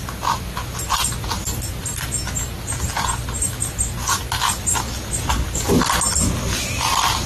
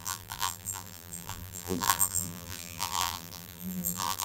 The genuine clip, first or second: first